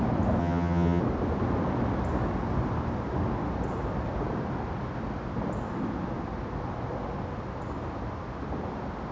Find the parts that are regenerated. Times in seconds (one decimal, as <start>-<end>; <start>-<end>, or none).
0.4-1.0